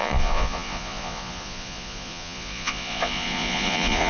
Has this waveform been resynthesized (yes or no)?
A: yes